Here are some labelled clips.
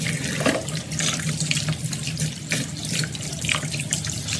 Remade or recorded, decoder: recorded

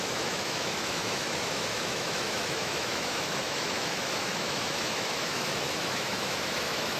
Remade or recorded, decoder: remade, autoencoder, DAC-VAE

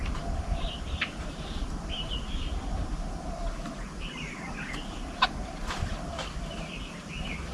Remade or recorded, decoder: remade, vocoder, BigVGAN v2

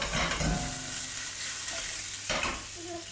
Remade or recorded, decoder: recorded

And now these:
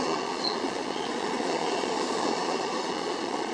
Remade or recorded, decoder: remade, vocoder, Vocos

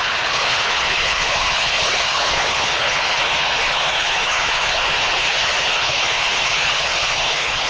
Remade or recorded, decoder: remade, codec, HILCodec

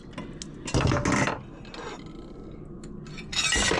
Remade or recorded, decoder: recorded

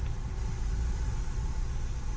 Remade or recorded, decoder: remade, vocoder, BigVGAN v2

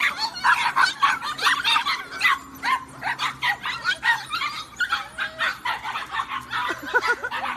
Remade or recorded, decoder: recorded